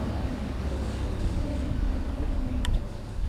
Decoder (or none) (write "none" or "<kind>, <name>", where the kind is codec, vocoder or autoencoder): codec, DAC